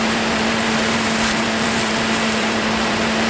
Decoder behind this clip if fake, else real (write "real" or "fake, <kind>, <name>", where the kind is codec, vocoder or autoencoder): fake, vocoder, BigVGAN v2